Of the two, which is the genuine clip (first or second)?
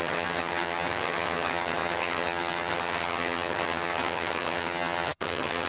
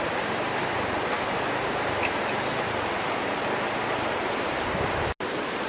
second